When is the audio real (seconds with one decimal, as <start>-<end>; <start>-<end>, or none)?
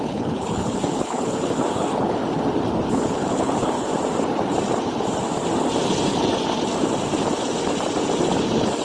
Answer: 2.2-2.9; 3.9-8.8